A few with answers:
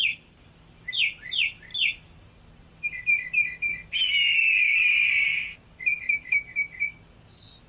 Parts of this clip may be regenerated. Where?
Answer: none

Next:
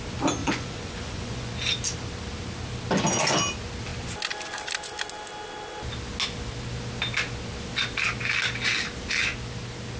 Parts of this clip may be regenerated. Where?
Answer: 0.4-1.5 (vocoder, Vocos)

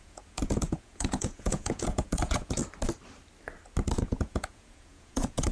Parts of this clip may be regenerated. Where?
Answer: 0.0-2.6 (vocoder, Vocos); 4.0-5.5

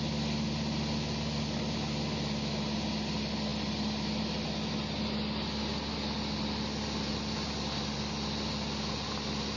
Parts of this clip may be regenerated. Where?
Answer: none